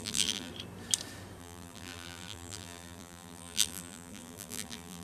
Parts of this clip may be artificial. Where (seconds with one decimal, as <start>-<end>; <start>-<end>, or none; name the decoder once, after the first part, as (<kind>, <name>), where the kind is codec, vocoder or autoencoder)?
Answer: 0.0-0.5 (vocoder, BigVGAN v2); 1.4-5.0